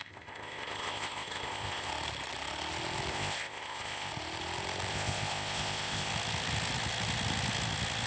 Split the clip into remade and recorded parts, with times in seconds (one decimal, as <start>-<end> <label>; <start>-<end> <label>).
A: 0.0-1.9 remade; 1.9-3.1 recorded; 3.1-4.1 remade; 4.1-4.9 recorded; 4.9-6.1 remade; 6.1-8.1 recorded

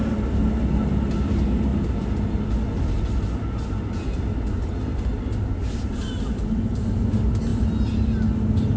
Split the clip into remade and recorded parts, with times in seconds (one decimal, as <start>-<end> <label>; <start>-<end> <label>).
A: 0.0-8.8 recorded